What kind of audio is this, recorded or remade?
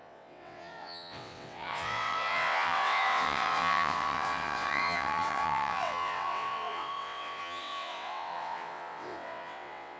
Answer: remade